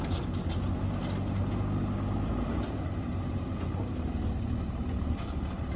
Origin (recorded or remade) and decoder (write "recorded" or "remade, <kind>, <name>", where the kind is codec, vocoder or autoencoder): remade, vocoder, BigVGAN v2